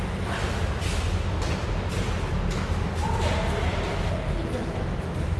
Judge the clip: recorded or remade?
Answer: recorded